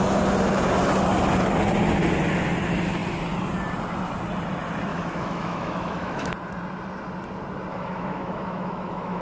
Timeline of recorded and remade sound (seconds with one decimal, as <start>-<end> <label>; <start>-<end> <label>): 0.0-4.9 recorded; 4.9-6.3 remade; 6.3-7.7 recorded; 7.7-9.2 remade